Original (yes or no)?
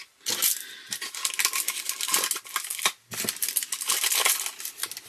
yes